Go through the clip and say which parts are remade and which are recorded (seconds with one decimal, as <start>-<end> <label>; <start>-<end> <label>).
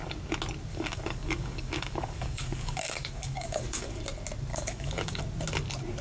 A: 0.0-0.7 recorded; 0.7-4.0 remade; 4.0-4.5 recorded; 4.5-5.2 remade; 5.2-6.0 recorded